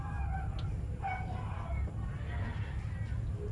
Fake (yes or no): no